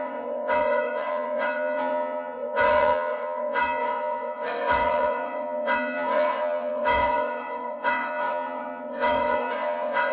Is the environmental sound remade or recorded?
remade